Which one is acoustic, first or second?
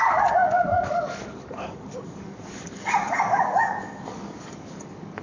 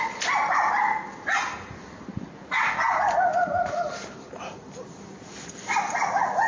second